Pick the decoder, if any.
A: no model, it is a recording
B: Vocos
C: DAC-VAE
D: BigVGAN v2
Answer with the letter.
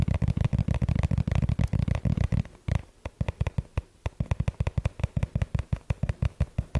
A